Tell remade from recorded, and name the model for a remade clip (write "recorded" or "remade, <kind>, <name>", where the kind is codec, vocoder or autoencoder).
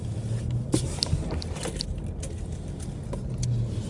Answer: recorded